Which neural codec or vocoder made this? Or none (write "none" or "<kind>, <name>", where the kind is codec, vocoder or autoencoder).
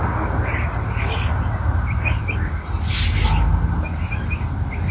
none